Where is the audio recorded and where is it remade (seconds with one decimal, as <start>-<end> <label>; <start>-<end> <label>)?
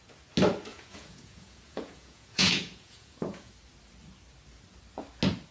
0.0-0.7 recorded; 0.7-3.5 remade; 3.5-5.5 recorded